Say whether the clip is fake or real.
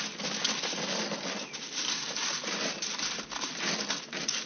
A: real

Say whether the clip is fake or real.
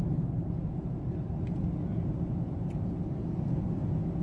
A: real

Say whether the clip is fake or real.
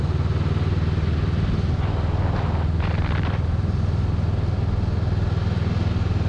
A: real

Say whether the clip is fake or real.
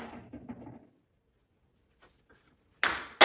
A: real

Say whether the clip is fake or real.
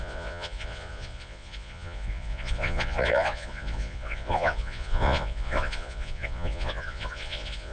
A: fake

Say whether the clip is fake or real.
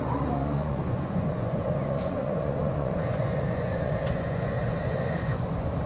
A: fake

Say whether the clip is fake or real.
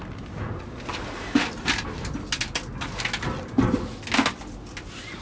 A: real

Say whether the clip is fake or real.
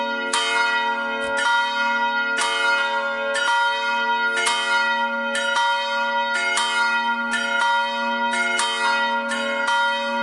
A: real